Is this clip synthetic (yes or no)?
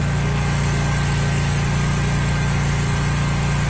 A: no